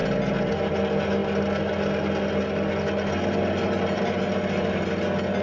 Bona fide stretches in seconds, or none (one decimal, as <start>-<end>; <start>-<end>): 0.0-5.4